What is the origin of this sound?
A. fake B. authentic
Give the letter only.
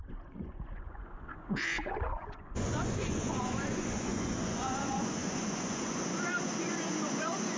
A